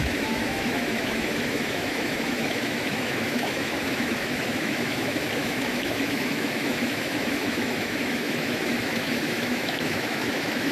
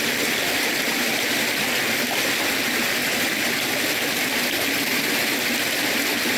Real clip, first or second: second